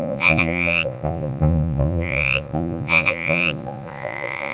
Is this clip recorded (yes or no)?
no